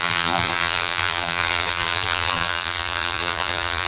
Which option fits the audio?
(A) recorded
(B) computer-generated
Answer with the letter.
B